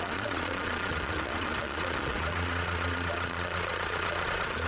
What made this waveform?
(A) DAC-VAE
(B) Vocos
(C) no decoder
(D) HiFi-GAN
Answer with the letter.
B